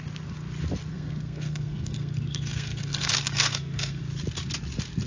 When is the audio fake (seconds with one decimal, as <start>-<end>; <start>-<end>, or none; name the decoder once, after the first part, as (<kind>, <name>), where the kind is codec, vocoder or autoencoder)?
0.9-4.0 (codec, SNAC)